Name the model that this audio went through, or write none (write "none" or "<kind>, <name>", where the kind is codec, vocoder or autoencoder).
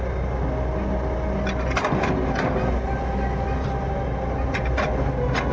none